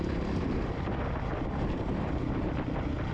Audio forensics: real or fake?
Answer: real